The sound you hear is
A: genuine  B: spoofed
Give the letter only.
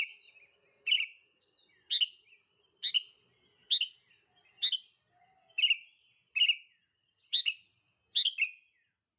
A